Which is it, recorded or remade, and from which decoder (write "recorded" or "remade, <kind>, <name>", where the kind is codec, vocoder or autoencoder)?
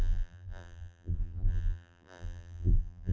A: remade, vocoder, BigVGAN v2